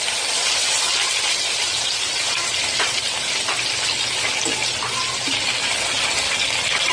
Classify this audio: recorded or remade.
recorded